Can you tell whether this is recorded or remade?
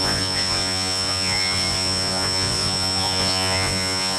remade